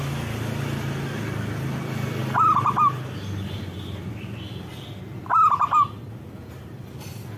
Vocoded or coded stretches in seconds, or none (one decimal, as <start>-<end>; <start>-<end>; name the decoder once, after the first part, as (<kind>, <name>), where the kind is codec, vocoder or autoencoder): none